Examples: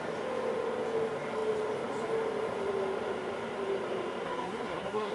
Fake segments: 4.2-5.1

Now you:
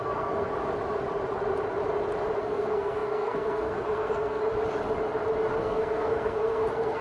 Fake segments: 0.0-0.5; 2.4-4.4; 5.6-7.0

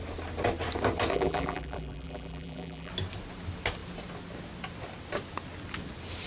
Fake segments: 1.1-2.9

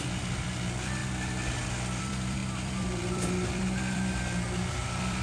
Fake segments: 0.0-1.0; 2.0-5.2

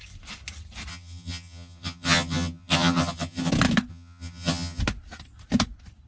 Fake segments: 0.9-3.5; 3.9-4.8

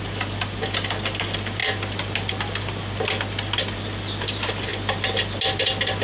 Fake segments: none

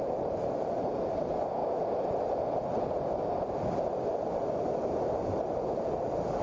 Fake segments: none

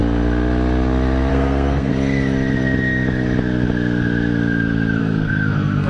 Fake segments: 1.3-1.9; 5.0-5.9